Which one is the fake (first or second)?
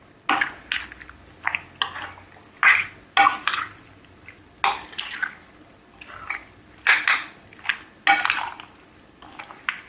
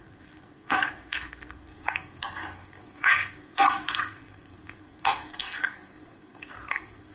second